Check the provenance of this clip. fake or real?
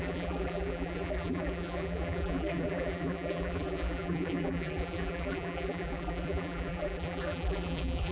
fake